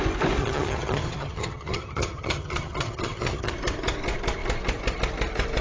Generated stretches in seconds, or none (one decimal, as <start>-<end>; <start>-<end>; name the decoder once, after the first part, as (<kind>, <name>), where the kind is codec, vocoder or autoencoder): 0.4-3.5 (vocoder, HiFi-GAN)